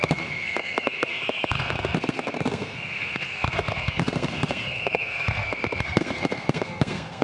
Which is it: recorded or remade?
remade